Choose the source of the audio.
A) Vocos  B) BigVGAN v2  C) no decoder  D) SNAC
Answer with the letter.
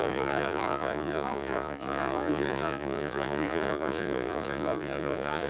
A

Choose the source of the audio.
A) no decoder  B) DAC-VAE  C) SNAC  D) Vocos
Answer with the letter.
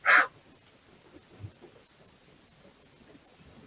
A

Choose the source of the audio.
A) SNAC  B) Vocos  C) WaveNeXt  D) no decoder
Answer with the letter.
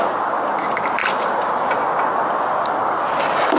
D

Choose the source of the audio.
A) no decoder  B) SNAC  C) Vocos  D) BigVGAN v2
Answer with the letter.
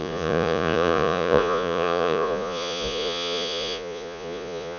C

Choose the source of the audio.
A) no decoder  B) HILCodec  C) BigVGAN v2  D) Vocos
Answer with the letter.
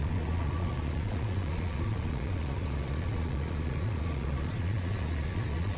D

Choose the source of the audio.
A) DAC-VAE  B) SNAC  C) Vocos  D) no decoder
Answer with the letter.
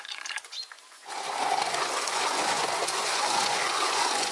C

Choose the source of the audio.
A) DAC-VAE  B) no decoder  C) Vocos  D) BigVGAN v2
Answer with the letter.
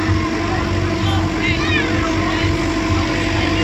B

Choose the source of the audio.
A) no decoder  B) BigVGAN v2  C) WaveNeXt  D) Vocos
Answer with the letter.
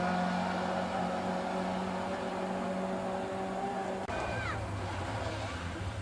A